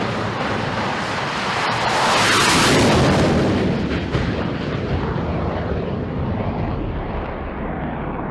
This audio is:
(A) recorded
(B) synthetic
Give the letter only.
B